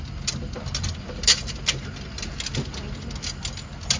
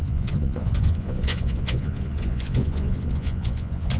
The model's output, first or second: second